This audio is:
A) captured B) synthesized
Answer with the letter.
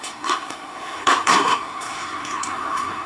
B